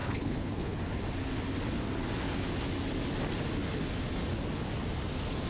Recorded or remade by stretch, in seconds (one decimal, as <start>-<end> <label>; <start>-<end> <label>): 0.0-0.8 remade; 0.8-5.5 recorded